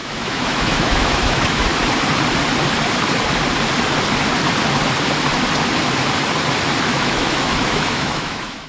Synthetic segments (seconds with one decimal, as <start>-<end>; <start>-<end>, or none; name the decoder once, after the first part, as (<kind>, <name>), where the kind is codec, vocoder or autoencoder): 0.0-1.7 (autoencoder, DAC-VAE); 6.9-8.7